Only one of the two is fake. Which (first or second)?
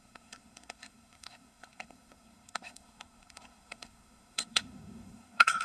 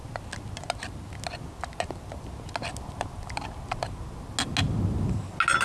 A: first